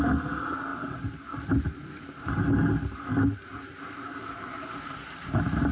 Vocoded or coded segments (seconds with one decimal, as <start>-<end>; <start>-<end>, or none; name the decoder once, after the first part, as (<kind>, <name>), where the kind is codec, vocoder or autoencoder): none